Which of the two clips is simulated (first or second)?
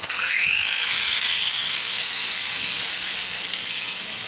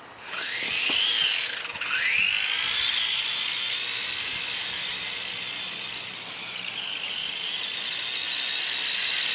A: first